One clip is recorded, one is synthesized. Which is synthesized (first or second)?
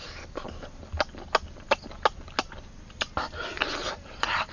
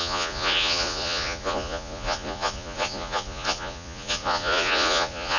second